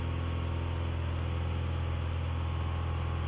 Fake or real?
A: real